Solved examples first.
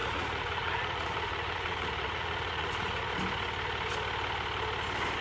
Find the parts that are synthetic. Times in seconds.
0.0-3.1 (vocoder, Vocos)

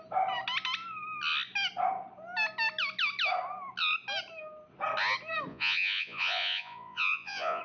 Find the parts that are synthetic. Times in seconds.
5.5-7.6 (vocoder, Vocos)

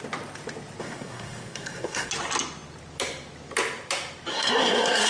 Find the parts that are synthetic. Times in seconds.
0.8-2.1 (codec, SNAC); 4.3-5.1